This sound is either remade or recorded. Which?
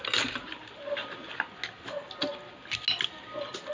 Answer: recorded